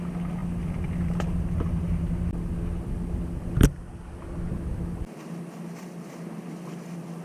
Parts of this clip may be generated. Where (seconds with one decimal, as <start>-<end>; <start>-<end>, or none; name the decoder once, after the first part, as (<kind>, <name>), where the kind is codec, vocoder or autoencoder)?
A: 0.4-1.4 (vocoder, BigVGAN v2)